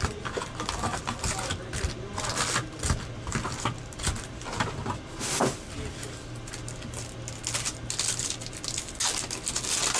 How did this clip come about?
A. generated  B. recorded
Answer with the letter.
B